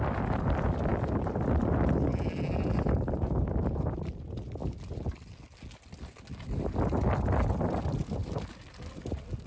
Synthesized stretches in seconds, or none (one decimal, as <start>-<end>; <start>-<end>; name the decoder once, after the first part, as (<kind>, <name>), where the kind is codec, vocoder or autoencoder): none